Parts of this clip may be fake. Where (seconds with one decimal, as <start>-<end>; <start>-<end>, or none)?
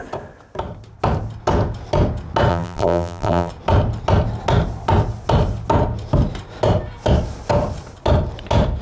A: 2.5-3.5